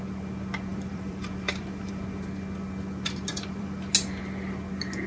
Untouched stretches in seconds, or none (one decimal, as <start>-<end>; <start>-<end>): 0.0-0.7; 2.0-3.3; 3.9-5.1